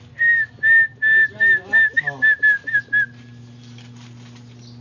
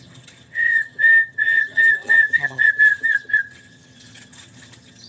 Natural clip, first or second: first